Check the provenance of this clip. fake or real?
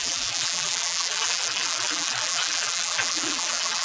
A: fake